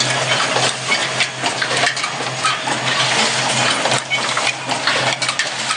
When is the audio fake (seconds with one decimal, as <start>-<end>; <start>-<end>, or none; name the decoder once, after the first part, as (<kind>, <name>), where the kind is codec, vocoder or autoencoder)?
none

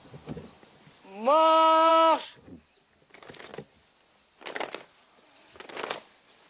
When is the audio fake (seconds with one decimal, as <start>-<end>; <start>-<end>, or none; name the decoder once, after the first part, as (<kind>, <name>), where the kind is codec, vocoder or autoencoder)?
none